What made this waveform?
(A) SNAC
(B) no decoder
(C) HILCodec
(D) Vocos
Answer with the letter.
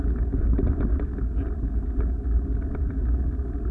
B